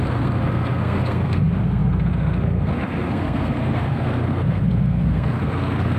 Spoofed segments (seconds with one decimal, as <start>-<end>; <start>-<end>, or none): 0.0-6.0